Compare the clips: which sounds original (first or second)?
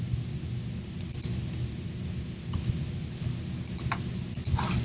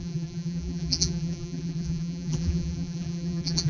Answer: first